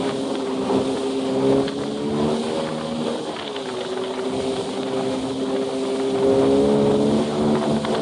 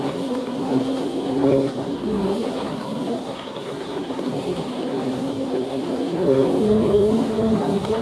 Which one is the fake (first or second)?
second